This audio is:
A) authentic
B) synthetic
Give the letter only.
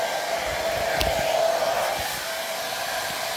A